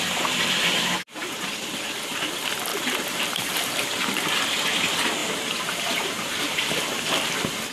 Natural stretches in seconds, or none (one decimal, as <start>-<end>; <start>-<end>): 0.0-2.7; 4.6-5.2; 6.8-7.7